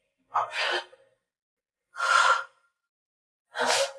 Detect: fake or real real